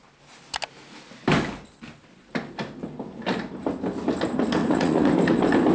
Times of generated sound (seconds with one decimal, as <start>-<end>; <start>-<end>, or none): 4.6-5.1